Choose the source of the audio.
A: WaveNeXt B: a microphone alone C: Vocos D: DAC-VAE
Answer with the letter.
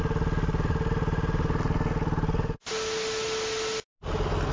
B